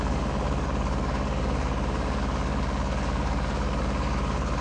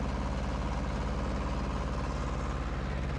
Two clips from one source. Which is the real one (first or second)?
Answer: second